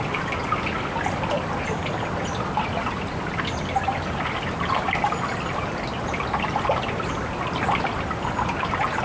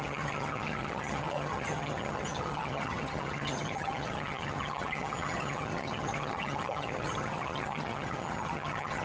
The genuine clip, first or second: first